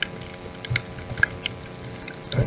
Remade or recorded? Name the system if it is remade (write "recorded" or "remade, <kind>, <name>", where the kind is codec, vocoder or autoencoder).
recorded